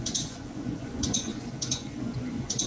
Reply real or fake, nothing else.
fake